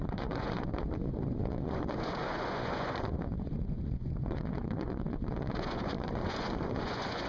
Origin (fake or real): fake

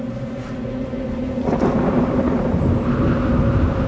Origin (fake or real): real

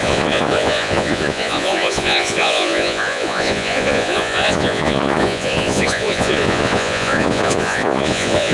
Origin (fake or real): fake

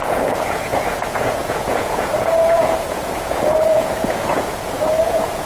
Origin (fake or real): fake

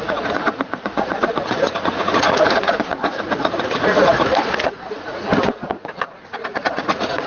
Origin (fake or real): fake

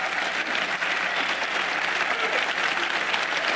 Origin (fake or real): real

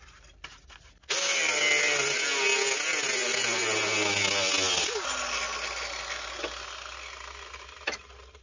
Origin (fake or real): real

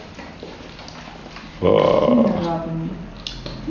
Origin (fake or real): real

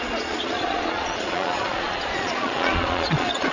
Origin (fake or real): fake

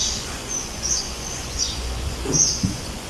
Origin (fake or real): fake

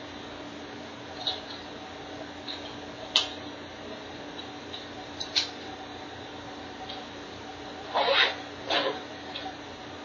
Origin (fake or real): real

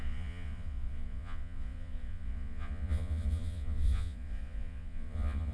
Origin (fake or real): fake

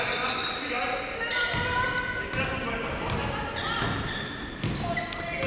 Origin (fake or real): real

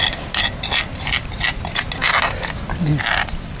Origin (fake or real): real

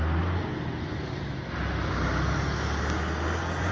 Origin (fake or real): real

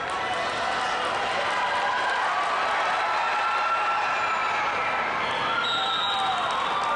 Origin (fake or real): real